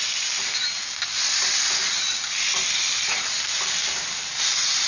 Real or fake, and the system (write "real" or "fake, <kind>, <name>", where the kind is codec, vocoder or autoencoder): real